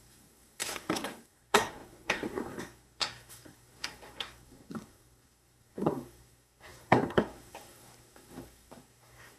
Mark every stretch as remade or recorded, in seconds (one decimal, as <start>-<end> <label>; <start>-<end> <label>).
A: 0.0-9.4 remade